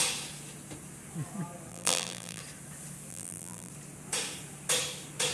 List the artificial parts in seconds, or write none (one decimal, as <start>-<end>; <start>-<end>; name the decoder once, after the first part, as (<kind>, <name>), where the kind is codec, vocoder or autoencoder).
1.7-2.4 (vocoder, BigVGAN v2); 3.1-3.7